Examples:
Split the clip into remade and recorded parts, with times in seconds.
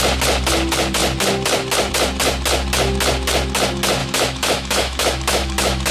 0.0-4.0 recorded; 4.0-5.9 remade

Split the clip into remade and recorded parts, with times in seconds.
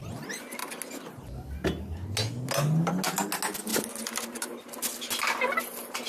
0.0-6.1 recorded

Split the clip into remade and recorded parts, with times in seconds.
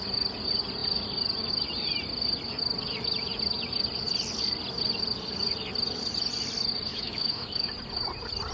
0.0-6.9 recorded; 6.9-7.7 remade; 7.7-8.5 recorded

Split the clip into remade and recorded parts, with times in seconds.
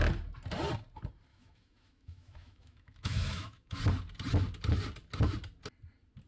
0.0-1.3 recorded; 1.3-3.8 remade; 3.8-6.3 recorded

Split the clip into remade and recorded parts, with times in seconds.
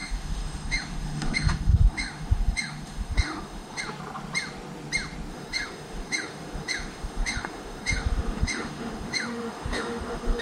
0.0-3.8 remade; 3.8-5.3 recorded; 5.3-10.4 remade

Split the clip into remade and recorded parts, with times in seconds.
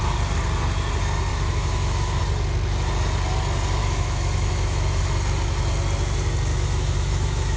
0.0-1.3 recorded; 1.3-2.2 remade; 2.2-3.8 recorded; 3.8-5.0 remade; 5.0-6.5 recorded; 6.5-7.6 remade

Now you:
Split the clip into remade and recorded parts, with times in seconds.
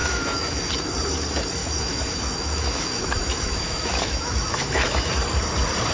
0.0-0.7 remade; 0.7-1.6 recorded; 1.6-5.1 remade; 5.1-5.9 recorded